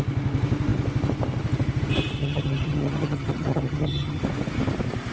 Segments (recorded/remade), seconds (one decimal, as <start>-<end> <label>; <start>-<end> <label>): 0.0-2.2 recorded; 2.2-4.2 remade; 4.2-5.1 recorded